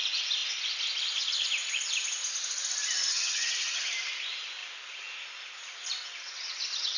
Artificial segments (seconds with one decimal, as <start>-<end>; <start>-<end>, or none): 3.1-3.9